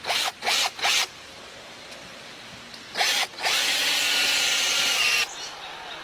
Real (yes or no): yes